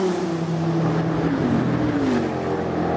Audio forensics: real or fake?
real